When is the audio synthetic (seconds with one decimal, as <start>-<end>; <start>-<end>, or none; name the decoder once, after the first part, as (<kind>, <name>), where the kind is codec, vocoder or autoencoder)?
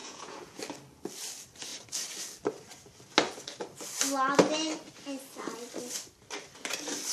0.0-0.6 (vocoder, Vocos)